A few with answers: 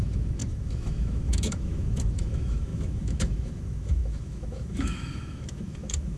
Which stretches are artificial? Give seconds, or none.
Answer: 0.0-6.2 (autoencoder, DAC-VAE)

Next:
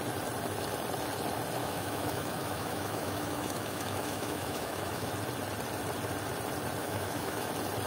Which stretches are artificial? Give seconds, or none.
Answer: 1.6-5.1 (autoencoder, DAC-VAE); 6.8-7.5

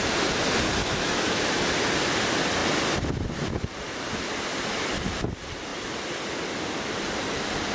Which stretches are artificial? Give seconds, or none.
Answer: 0.8-1.4 (autoencoder, DAC-VAE)

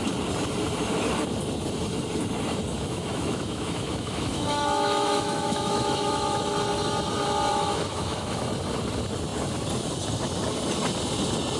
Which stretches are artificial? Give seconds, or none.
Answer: 2.7-6.5 (autoencoder, DAC-VAE); 7.5-8.4